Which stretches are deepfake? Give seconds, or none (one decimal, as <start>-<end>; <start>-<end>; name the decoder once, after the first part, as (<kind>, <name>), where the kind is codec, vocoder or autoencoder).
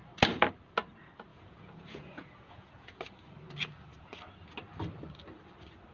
1.3-3.0 (vocoder, Vocos)